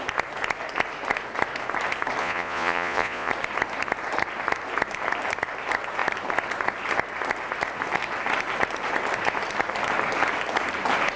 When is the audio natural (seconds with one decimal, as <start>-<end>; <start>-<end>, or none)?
0.0-2.2; 3.3-11.2